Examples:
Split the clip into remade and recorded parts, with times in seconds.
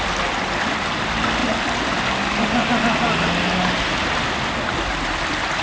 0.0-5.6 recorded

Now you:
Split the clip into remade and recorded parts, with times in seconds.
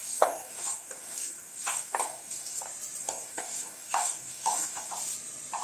0.0-2.6 remade; 2.6-3.0 recorded; 3.0-4.9 remade; 4.9-5.6 recorded